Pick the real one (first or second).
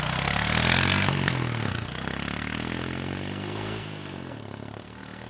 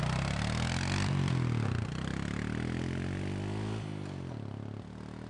second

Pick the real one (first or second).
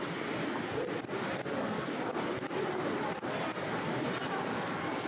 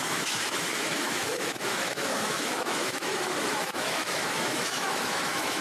first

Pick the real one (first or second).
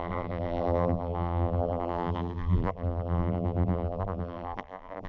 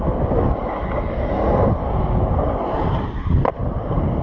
second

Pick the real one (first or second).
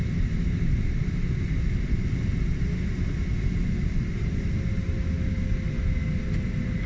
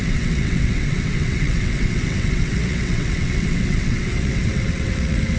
first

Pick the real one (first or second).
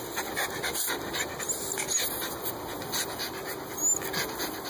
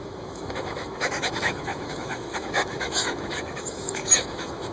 first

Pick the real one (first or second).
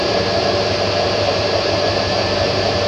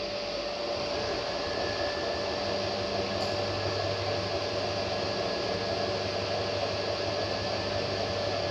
second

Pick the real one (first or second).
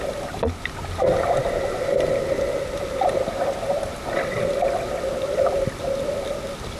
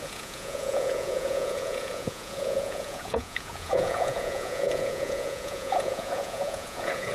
first